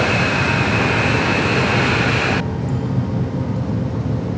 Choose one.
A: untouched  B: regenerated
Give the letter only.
A